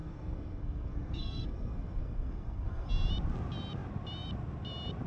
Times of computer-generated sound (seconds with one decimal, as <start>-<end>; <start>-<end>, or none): 0.0-2.9